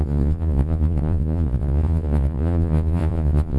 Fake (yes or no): yes